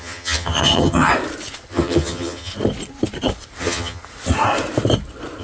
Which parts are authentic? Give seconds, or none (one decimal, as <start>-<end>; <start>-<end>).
1.1-1.7; 2.5-3.6; 4.0-5.4